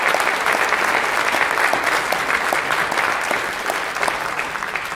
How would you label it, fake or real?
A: real